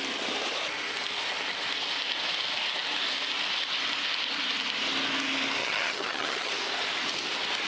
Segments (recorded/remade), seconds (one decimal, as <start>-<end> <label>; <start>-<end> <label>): 0.0-5.6 recorded; 5.6-6.5 remade; 6.5-7.7 recorded